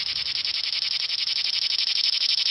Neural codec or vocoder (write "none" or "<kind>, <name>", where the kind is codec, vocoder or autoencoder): none